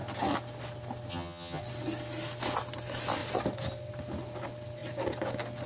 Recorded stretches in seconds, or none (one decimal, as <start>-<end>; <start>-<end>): 0.0-1.1; 1.6-5.7